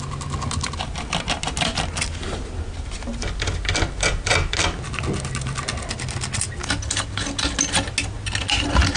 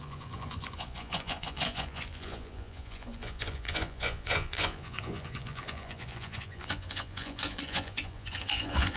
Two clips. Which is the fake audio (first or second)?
second